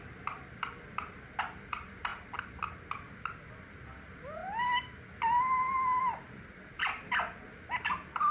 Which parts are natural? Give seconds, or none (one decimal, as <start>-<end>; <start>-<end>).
2.1-3.7; 4.4-6.0